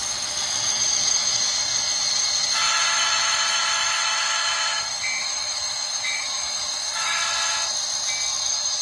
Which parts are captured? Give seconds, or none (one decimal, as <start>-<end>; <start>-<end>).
0.0-0.7; 7.2-8.4